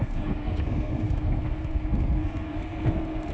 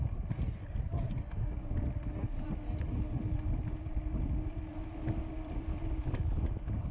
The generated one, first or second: first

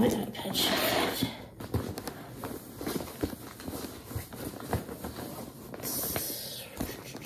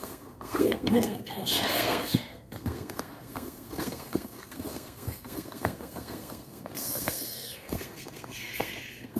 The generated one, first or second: second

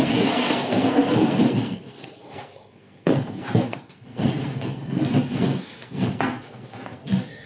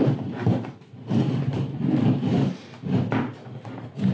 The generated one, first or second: first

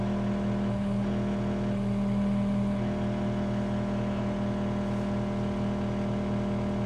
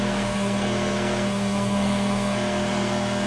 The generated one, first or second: second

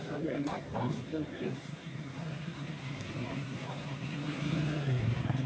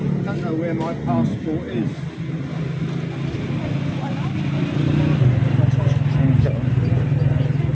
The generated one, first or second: first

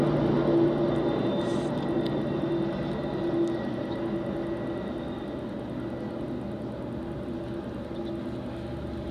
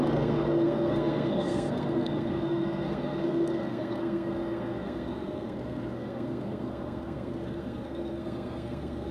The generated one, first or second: second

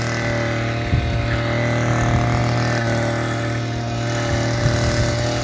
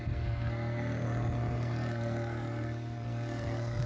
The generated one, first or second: second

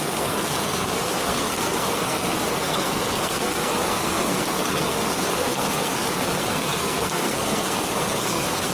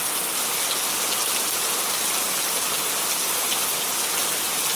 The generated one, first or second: first